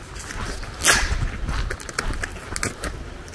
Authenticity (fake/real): real